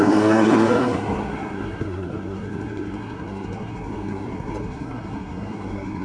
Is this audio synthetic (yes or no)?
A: yes